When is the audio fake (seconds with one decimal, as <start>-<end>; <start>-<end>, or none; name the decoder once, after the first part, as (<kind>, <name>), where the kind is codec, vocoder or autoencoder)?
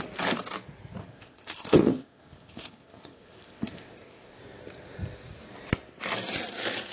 1.0-4.4 (codec, ZipCodec)